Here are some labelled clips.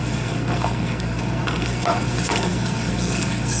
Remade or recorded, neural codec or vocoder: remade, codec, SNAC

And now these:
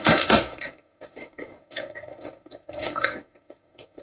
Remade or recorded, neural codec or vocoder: remade, codec, SNAC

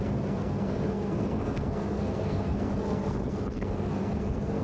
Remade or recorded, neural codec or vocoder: remade, codec, SNAC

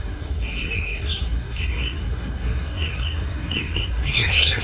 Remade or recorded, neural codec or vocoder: remade, codec, SNAC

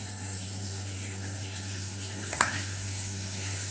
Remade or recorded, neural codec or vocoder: remade, codec, SNAC